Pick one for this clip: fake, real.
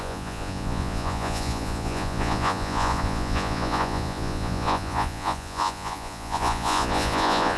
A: fake